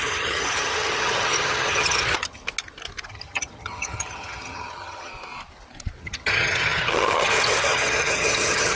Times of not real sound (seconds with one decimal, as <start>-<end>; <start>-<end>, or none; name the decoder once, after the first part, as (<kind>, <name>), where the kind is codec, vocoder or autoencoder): 0.0-2.4 (vocoder, HiFi-GAN); 3.1-5.1; 6.0-8.8